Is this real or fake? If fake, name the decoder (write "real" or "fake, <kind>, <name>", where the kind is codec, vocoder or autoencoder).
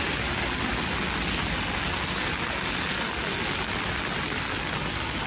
real